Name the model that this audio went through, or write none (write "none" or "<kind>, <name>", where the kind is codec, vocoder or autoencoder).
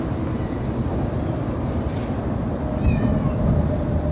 none